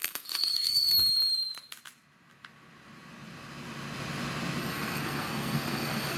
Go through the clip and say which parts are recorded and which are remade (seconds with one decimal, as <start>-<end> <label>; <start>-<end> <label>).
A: 0.0-0.9 remade; 0.9-4.6 recorded; 4.6-6.2 remade